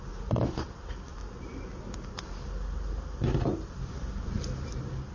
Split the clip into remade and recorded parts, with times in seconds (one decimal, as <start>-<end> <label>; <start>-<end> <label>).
0.0-5.1 recorded